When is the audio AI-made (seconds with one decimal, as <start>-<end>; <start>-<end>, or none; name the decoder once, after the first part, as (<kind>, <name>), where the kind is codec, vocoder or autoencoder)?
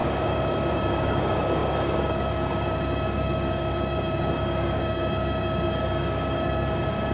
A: 0.0-7.1 (codec, DAC)